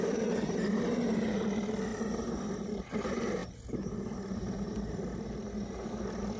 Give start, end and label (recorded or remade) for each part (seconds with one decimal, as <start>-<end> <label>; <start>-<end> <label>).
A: 0.0-6.4 recorded